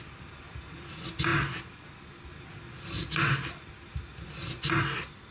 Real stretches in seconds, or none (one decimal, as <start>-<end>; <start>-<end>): 0.0-5.3